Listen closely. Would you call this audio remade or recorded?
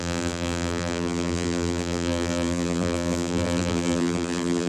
remade